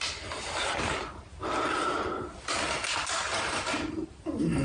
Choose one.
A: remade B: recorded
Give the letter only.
A